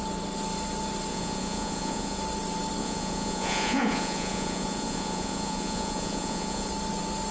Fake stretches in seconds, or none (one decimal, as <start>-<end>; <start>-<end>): 1.1-2.2; 2.8-6.7